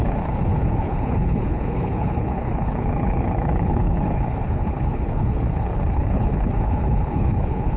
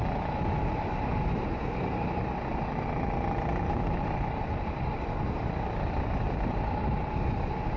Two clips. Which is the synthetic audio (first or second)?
first